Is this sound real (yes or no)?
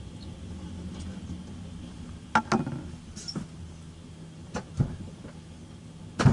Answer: yes